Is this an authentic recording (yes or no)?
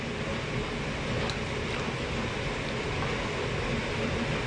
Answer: yes